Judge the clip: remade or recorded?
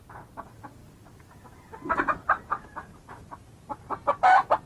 recorded